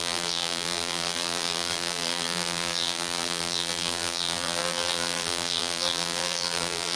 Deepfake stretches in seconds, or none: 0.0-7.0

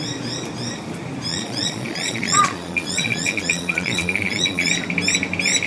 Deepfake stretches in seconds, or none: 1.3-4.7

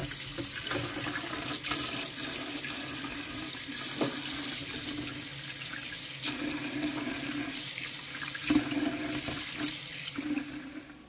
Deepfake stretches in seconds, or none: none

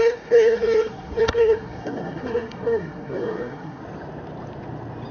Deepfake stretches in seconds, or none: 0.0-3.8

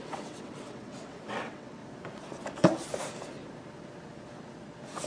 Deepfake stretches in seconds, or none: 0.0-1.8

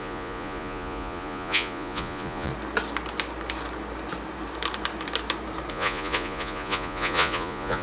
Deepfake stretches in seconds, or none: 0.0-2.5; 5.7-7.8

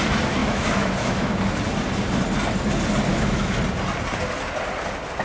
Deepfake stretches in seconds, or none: 0.4-1.4; 3.1-3.6

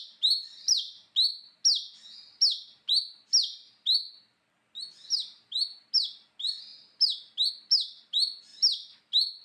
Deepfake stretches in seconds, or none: none